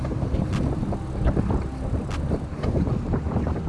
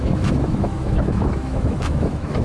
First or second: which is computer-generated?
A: second